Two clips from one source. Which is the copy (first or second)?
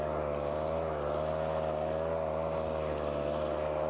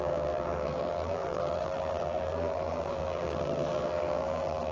second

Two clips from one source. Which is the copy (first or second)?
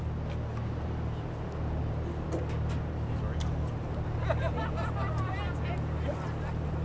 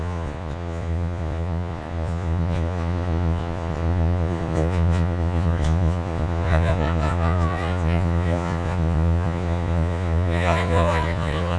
second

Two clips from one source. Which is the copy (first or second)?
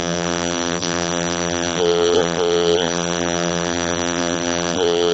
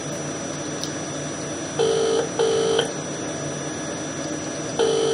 first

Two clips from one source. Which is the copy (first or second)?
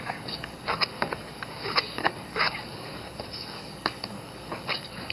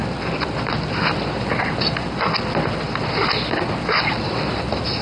first